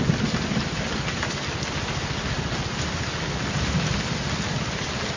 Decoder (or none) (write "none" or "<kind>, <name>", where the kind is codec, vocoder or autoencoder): none